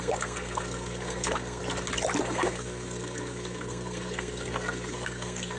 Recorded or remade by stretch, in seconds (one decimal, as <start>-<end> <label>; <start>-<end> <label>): 0.0-1.6 remade; 1.6-2.2 recorded; 2.2-5.6 remade